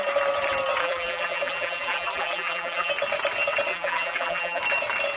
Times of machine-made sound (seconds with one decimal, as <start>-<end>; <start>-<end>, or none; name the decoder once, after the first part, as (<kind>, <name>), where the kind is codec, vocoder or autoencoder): 0.8-2.9 (vocoder, BigVGAN v2); 3.7-4.6